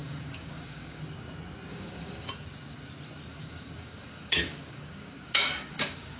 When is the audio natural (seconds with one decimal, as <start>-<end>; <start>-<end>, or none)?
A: 1.0-1.7; 2.3-3.3